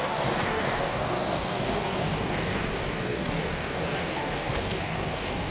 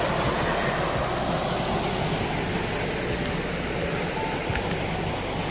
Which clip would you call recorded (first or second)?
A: second